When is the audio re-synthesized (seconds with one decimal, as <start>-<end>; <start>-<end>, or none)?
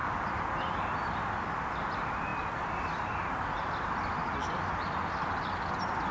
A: none